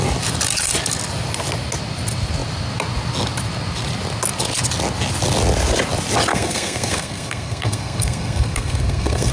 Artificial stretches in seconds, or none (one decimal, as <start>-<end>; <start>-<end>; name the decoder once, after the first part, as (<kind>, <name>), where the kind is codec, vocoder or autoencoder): 6.3-9.3 (codec, SNAC)

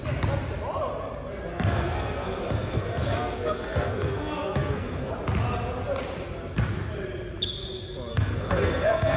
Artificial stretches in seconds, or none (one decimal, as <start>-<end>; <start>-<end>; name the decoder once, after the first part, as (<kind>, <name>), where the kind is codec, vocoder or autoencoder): 1.5-5.1 (codec, SNAC); 8.1-9.2

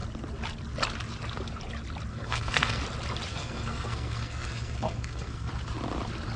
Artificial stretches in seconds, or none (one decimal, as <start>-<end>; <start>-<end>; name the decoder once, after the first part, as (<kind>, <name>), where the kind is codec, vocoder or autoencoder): 2.1-2.8 (codec, SNAC); 3.3-5.5

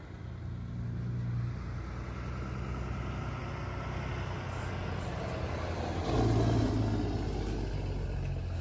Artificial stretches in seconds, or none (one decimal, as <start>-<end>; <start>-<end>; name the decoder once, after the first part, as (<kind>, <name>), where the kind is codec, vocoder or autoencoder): none

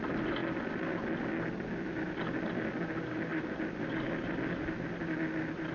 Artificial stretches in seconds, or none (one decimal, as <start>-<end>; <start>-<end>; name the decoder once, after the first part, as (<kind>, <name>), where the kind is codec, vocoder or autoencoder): none

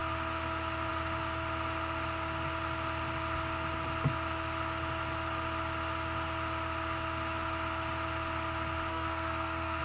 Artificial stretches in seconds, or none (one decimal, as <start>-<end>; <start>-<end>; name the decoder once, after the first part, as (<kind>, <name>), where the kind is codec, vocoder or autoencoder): 8.9-9.8 (codec, SNAC)

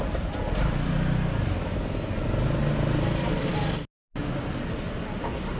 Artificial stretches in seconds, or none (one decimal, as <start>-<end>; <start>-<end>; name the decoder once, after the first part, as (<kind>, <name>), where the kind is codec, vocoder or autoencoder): none

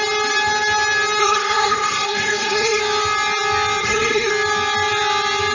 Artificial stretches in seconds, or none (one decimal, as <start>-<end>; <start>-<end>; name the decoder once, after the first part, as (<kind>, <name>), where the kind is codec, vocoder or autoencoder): 1.2-2.8 (codec, SNAC); 3.8-4.3